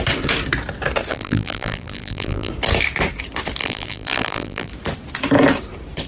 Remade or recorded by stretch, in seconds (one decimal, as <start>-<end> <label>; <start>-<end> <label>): 0.0-1.1 recorded; 1.1-2.5 remade; 2.5-3.6 recorded; 3.6-4.7 remade; 4.7-6.1 recorded